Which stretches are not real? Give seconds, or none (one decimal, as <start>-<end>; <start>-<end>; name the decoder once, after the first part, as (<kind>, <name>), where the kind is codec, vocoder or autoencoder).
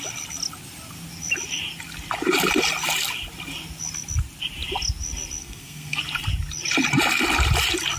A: 5.4-6.0 (codec, SNAC)